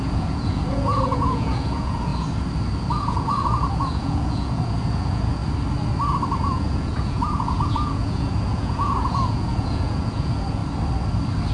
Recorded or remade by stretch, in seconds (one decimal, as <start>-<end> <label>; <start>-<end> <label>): 0.0-2.1 remade; 2.1-2.9 recorded; 2.9-5.4 remade; 5.4-6.4 recorded; 6.4-10.6 remade; 10.6-11.5 recorded